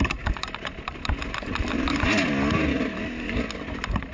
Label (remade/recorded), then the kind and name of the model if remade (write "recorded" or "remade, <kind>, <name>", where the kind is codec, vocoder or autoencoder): recorded